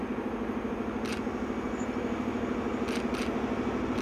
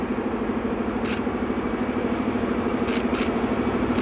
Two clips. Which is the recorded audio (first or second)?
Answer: first